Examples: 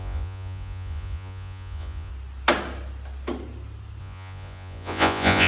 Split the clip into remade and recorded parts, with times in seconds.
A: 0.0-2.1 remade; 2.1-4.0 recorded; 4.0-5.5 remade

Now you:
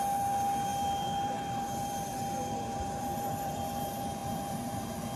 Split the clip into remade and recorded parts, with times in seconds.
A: 0.0-0.7 recorded; 0.7-3.8 remade; 3.8-4.2 recorded; 4.2-4.8 remade; 4.8-5.2 recorded

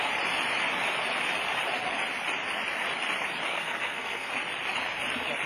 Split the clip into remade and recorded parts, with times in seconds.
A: 0.0-3.5 recorded; 3.5-4.3 remade; 4.3-5.5 recorded

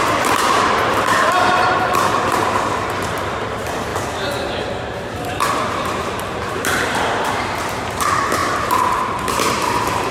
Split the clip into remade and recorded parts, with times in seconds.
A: 0.0-3.9 remade; 3.9-4.7 recorded; 4.7-10.1 remade

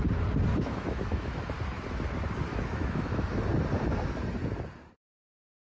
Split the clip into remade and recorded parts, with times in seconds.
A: 0.0-0.5 recorded; 0.5-1.5 remade; 1.5-2.5 recorded; 2.5-3.4 remade; 3.4-5.6 recorded

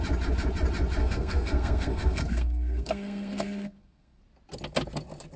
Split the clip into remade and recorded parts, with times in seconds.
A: 0.0-1.0 recorded; 1.0-4.2 remade; 4.2-5.4 recorded

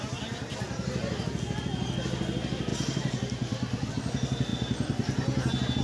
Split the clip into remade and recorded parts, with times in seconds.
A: 0.0-5.8 recorded

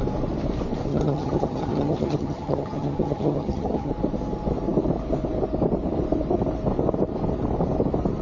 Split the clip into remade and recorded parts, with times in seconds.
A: 0.0-0.9 recorded; 0.9-3.9 remade; 3.9-8.2 recorded